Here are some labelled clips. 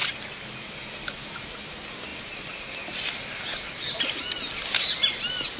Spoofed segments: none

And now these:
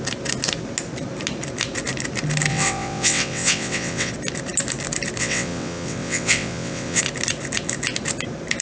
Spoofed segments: 2.5-4.1 (vocoder, WaveNeXt); 5.2-7.0

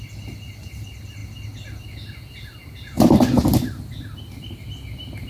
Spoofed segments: none

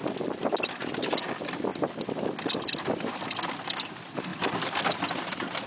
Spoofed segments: none

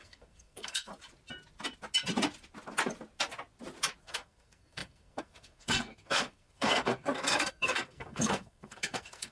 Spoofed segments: 0.0-0.9 (codec, SNAC); 4.0-9.3

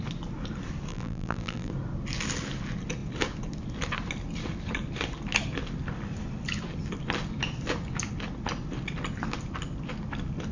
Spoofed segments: 0.9-1.7 (vocoder, BigVGAN v2)

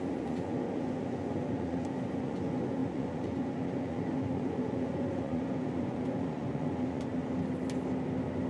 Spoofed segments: 0.0-7.2 (vocoder, Vocos)

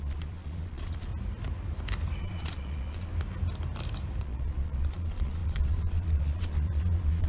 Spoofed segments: 0.0-1.1 (vocoder, Vocos); 2.2-3.1; 4.2-7.3